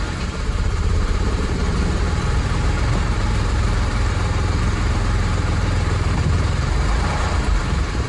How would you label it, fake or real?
fake